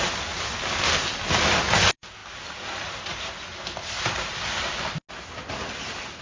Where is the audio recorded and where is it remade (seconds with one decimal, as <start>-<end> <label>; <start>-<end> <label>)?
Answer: 0.0-6.2 recorded

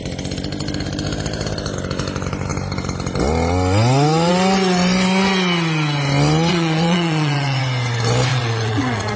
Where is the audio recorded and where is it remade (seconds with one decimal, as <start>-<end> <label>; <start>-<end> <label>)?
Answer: 0.0-6.5 recorded; 6.5-7.6 remade; 7.6-8.3 recorded; 8.3-9.2 remade

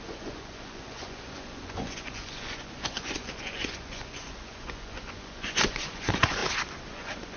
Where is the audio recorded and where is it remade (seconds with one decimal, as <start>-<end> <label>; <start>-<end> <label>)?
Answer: 0.0-6.4 remade; 6.4-6.9 recorded; 6.9-7.4 remade